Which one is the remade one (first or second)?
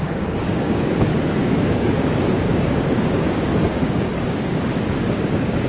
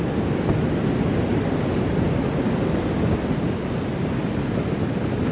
first